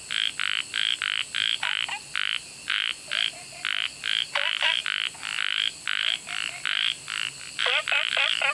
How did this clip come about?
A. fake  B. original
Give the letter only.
B